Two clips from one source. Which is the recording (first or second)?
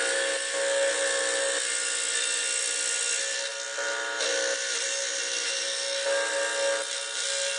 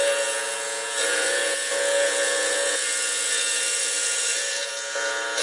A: first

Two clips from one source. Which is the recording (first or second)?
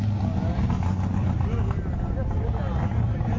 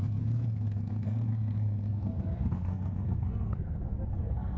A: first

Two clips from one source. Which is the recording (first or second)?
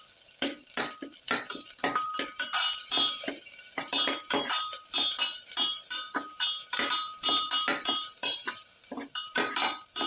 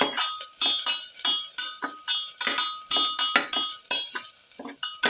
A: second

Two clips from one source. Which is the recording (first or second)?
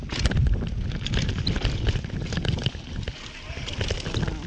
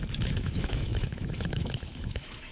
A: first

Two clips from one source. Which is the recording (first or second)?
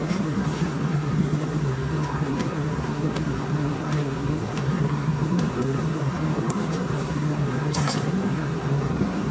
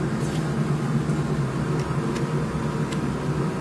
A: second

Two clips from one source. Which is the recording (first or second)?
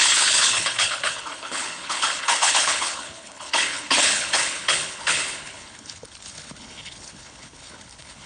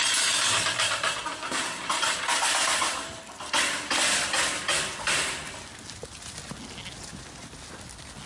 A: second